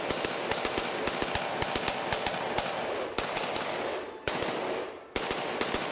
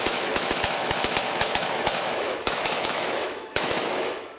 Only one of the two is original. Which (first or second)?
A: first